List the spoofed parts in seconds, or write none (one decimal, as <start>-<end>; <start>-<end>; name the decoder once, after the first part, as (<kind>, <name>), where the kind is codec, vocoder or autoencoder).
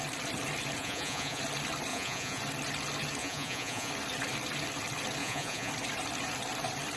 0.8-1.4 (vocoder, Vocos); 1.9-2.4; 3.2-3.9; 5.2-5.7